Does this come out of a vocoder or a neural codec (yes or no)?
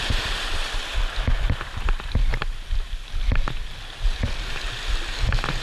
no